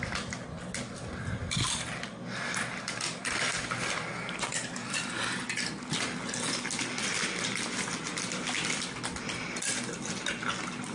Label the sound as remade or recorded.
recorded